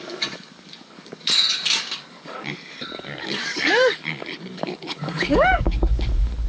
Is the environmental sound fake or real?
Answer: fake